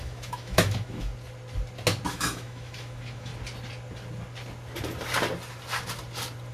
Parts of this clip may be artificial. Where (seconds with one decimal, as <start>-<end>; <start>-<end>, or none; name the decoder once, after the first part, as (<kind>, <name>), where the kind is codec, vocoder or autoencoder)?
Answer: 0.0-1.1 (autoencoder, DAC-VAE); 2.1-3.3